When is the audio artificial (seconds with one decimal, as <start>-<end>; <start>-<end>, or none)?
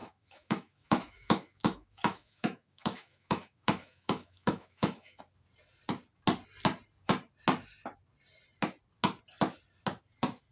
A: 0.0-5.2